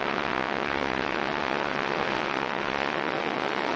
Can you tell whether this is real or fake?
fake